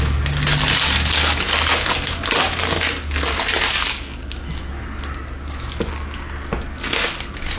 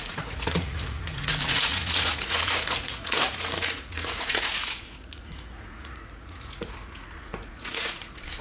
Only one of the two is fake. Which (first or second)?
second